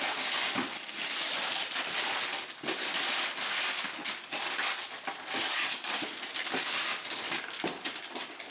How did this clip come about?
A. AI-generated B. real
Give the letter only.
B